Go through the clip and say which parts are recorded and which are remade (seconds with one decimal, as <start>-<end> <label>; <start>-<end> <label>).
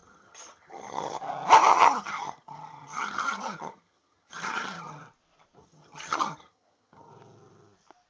0.0-1.2 remade; 1.2-1.7 recorded; 1.7-5.0 remade; 5.0-5.6 recorded; 5.6-7.1 remade; 7.1-8.1 recorded